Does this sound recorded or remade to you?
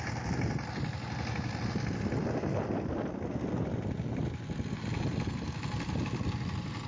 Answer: recorded